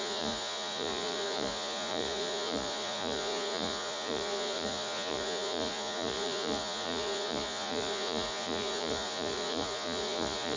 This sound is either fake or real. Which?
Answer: fake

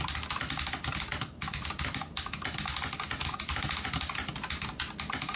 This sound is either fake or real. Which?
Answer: real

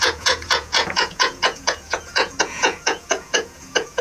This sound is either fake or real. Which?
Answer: fake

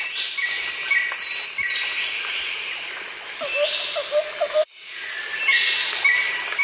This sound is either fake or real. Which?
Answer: real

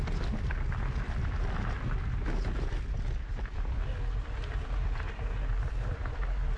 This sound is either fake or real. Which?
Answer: real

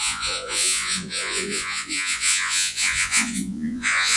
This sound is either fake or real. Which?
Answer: fake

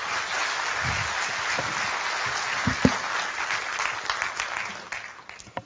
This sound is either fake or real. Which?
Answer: real